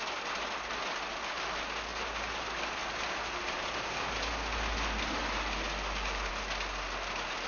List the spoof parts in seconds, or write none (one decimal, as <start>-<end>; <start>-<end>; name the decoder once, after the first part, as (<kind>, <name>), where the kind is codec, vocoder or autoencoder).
none